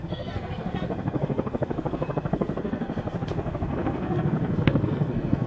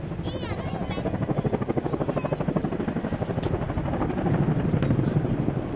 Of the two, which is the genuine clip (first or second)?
second